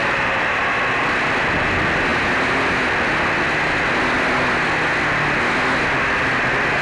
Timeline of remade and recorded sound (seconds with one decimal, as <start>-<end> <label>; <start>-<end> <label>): 0.0-0.6 remade; 0.6-6.8 recorded